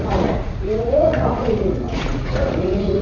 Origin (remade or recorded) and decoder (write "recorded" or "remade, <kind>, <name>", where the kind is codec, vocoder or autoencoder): remade, vocoder, Vocos